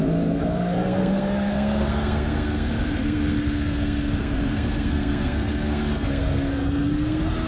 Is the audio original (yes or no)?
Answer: no